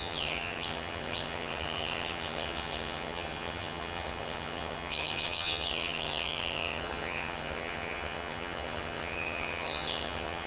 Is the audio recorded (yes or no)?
no